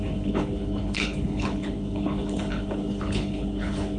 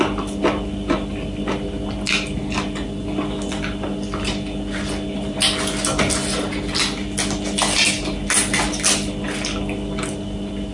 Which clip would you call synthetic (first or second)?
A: first